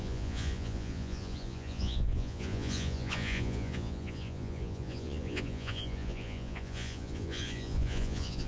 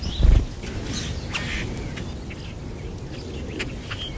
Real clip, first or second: second